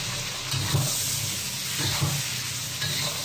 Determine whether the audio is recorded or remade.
recorded